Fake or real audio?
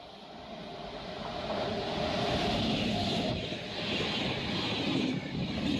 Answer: real